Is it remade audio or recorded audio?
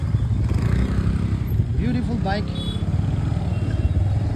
recorded